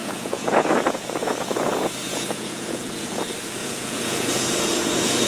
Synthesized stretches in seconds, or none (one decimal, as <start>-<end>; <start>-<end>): 0.0-3.2; 3.6-5.3